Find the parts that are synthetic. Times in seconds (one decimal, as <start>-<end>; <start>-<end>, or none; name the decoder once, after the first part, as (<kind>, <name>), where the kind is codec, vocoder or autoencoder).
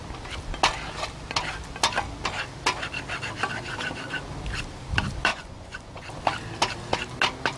5.3-6.1 (vocoder, Vocos)